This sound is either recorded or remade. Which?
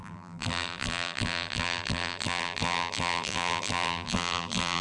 remade